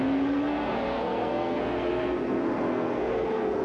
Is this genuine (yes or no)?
no